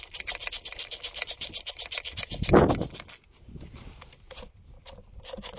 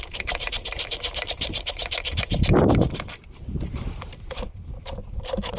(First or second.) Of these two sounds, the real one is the first